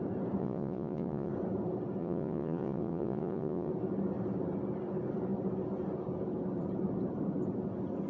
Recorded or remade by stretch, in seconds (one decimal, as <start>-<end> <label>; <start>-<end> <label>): 0.0-0.4 recorded; 0.4-1.3 remade; 1.3-2.0 recorded; 2.0-3.7 remade; 3.7-8.1 recorded